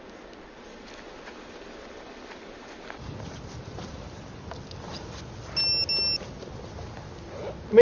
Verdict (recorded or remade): recorded